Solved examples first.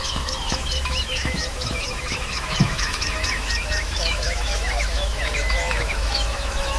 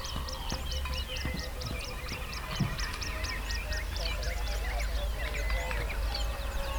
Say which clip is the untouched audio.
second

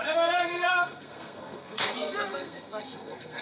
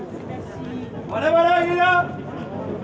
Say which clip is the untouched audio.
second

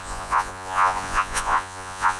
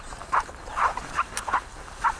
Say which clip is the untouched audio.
second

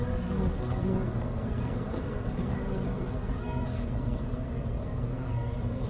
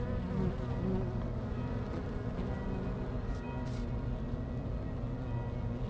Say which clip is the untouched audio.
second